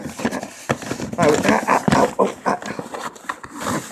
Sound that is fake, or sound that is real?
real